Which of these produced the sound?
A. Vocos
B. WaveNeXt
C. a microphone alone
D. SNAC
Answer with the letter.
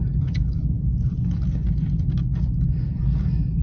C